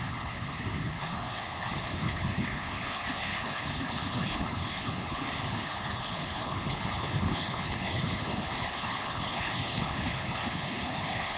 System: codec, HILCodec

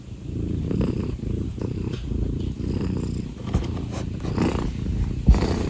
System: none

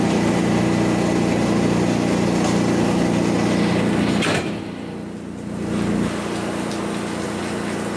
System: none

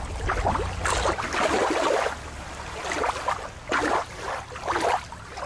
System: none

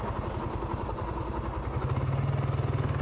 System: none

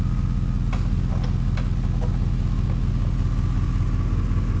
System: none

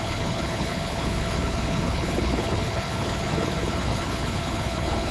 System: codec, HILCodec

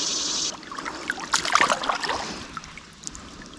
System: none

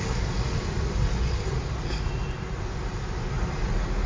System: none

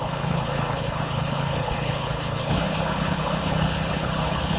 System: codec, HILCodec